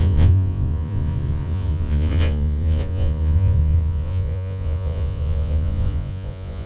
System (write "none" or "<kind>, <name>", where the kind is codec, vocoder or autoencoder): vocoder, Vocos